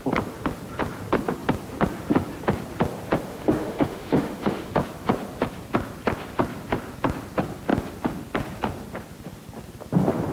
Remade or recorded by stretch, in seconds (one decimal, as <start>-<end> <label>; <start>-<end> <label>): 0.0-3.3 recorded; 3.3-4.7 remade; 4.7-10.3 recorded